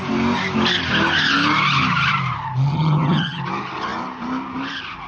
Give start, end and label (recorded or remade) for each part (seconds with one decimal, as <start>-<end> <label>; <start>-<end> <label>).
0.0-2.7 recorded; 2.7-3.4 remade; 3.4-5.1 recorded